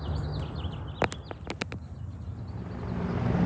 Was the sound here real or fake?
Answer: real